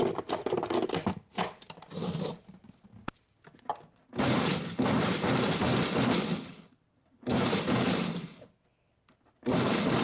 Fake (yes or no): no